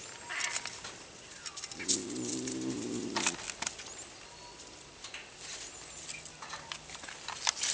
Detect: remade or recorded recorded